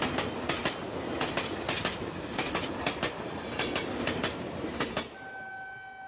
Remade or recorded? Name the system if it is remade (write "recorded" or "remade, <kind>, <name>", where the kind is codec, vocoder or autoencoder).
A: recorded